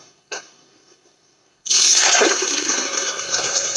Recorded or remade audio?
remade